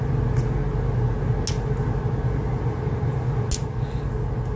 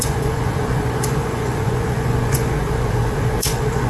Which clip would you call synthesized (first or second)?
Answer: second